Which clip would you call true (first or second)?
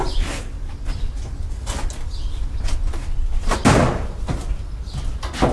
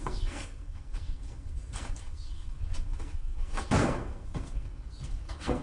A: first